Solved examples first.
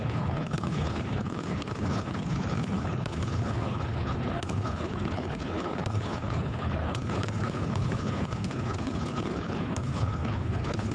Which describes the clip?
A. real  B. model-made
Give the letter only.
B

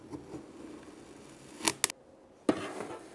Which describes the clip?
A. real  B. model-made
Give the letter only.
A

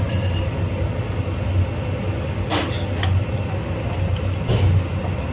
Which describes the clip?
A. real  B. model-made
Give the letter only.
A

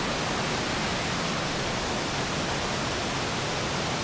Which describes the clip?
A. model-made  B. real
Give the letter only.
B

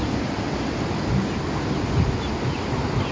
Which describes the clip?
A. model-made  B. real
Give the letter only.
B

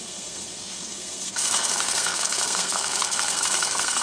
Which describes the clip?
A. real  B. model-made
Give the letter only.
B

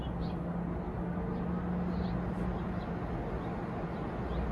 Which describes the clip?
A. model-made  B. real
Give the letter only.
B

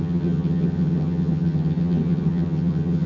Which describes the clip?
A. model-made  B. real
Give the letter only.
A